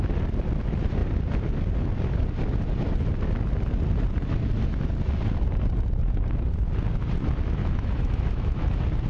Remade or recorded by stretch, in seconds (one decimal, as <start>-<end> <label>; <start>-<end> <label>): 0.0-7.6 recorded; 7.6-8.7 remade; 8.7-9.1 recorded